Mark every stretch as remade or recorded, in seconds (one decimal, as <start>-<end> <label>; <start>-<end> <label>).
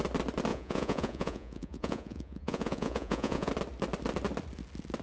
0.0-0.5 recorded; 0.5-3.5 remade; 3.5-5.0 recorded